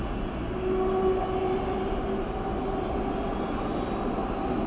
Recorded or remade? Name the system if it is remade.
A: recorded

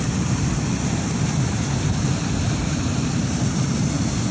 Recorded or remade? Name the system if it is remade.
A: recorded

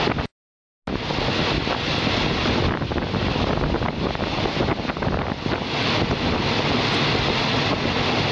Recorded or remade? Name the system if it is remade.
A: recorded